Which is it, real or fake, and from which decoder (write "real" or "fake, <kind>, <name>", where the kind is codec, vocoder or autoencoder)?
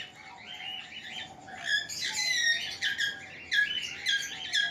real